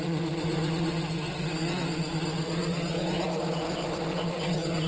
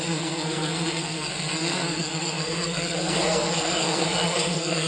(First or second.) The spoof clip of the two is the second